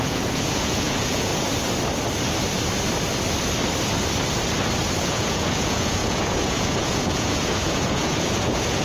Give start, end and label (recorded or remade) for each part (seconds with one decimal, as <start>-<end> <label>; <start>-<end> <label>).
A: 0.0-1.3 remade; 1.3-5.0 recorded; 5.0-8.8 remade